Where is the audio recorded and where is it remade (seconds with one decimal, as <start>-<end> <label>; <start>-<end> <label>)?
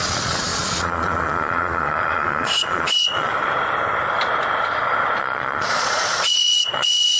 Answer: 0.0-3.3 remade; 3.3-5.2 recorded; 5.2-7.2 remade